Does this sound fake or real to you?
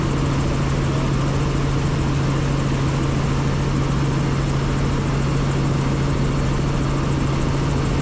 real